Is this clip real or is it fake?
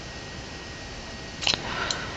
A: real